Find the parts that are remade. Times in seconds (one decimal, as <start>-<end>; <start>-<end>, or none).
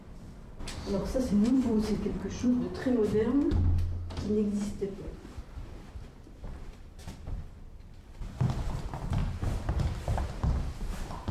1.0-2.5; 4.5-5.4; 7.0-7.8; 9.2-9.8